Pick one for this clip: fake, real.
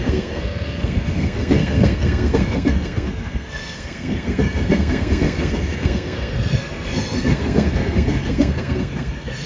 fake